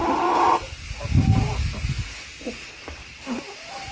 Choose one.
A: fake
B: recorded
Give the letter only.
B